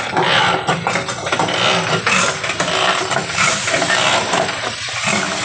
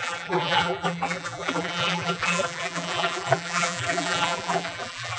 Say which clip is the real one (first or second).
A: first